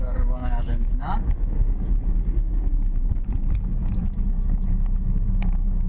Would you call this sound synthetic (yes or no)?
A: yes